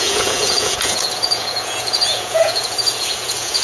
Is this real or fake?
fake